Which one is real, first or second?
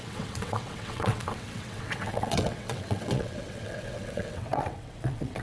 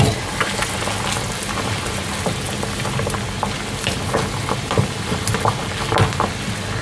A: second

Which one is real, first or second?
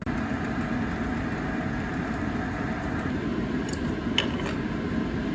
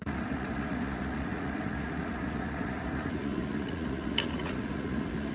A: first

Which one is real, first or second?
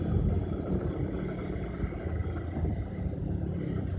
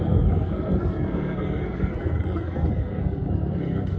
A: first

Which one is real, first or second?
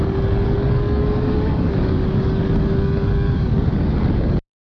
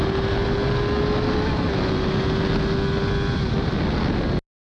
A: second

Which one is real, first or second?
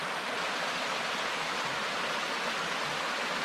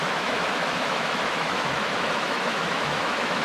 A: first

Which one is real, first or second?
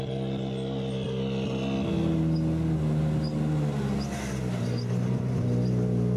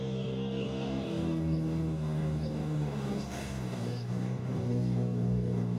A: first